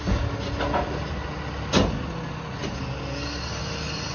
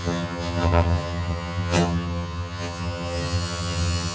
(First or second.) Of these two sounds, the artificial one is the second